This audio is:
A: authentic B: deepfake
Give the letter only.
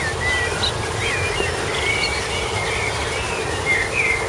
A